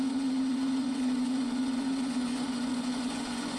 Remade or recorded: remade